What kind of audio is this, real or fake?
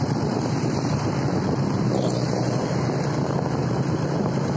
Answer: fake